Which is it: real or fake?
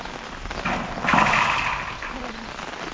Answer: real